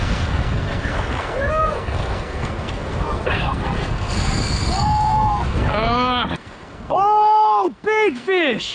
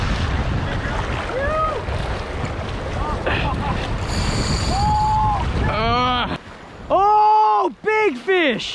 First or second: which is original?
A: second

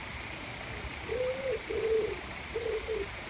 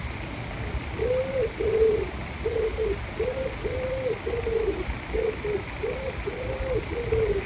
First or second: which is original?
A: second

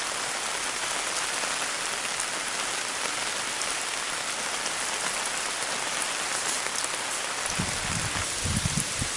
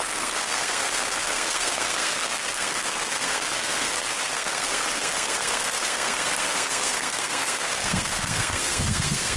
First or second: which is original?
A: first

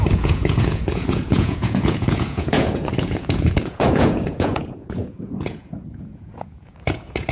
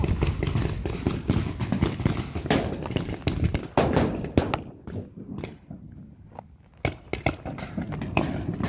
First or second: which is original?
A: second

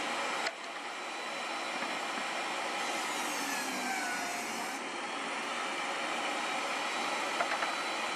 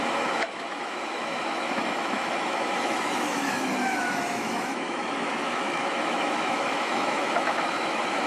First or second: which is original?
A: first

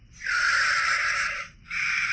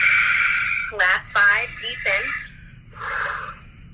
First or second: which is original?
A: second